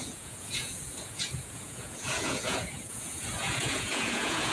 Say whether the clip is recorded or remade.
remade